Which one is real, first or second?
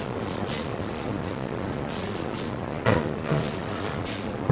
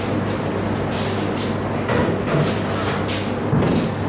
second